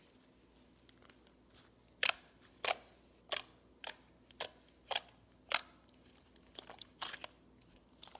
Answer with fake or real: real